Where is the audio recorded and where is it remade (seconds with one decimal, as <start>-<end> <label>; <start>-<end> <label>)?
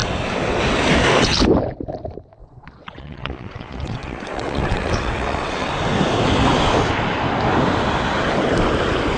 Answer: 0.0-2.4 recorded; 2.4-5.7 remade; 5.7-9.2 recorded